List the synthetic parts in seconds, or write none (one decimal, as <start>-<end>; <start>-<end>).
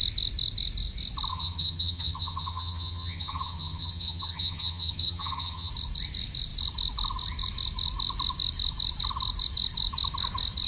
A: 1.3-5.7